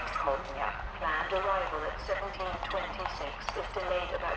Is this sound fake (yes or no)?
no